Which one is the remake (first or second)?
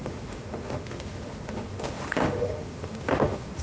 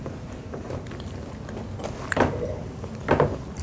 first